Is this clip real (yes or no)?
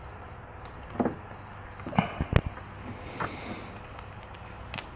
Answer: yes